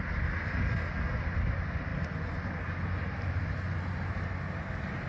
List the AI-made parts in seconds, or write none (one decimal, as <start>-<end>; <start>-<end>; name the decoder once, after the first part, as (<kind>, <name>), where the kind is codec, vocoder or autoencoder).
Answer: none